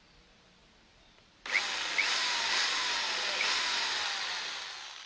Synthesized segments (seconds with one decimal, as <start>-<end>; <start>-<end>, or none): none